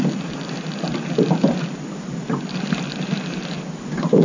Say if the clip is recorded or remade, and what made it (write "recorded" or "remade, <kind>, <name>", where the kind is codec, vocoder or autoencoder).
recorded